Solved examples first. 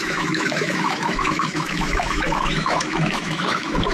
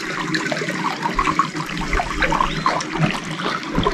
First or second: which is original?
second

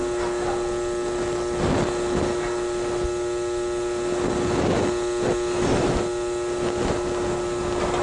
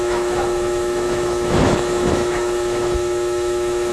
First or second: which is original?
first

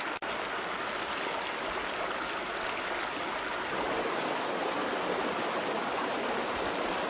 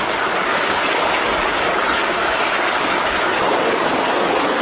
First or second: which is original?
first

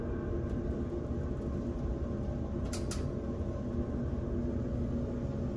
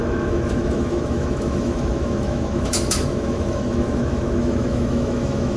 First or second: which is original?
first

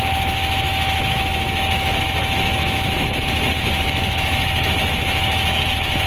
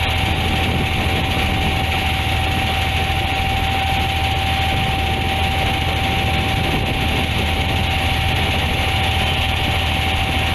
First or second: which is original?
second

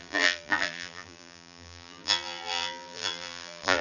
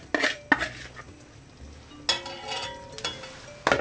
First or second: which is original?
second